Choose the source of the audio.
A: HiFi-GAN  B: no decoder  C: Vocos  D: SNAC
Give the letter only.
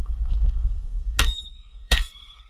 D